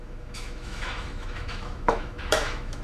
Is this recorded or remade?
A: remade